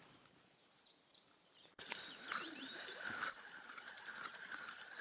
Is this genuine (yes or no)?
no